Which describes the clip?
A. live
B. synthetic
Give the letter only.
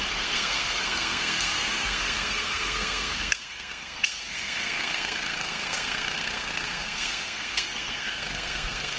B